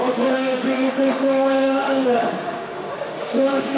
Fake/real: fake